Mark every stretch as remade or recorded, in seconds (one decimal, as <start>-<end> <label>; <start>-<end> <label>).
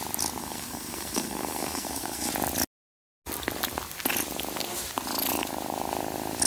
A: 0.0-0.4 recorded; 0.4-2.3 remade; 2.3-6.5 recorded